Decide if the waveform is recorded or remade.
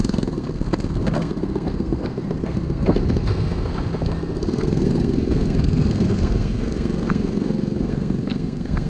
remade